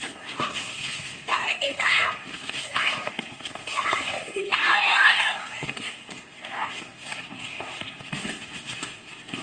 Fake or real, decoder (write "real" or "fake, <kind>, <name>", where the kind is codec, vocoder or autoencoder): fake, codec, SNAC